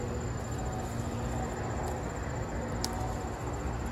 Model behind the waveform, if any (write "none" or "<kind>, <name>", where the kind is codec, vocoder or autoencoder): none